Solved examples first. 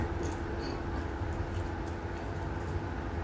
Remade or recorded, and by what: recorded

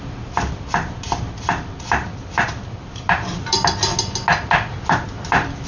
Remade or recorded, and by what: recorded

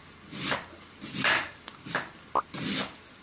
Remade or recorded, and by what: recorded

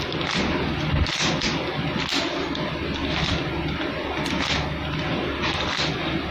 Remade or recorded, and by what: recorded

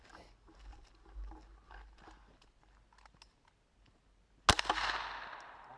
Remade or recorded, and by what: recorded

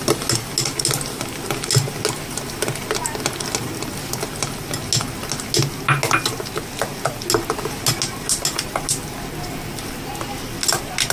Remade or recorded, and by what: recorded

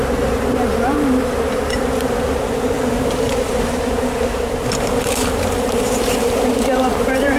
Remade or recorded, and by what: remade, vocoder, BigVGAN v2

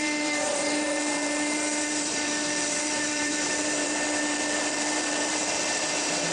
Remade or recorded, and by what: remade, vocoder, BigVGAN v2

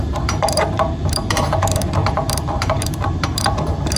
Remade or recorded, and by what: remade, vocoder, BigVGAN v2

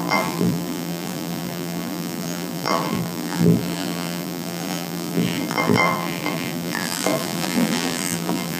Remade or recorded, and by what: remade, vocoder, BigVGAN v2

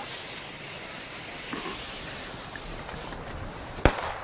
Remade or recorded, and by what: remade, vocoder, BigVGAN v2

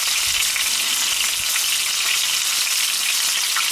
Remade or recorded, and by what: recorded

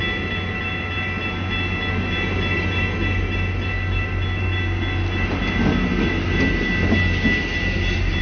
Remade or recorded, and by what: recorded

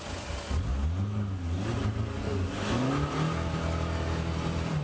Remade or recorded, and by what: recorded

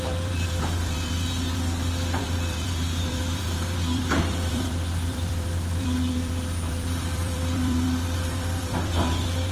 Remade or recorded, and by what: remade, vocoder, BigVGAN v2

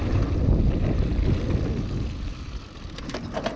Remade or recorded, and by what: recorded